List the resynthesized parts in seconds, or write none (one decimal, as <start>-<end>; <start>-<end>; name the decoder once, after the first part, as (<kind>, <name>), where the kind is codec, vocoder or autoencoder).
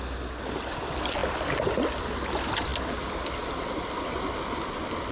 none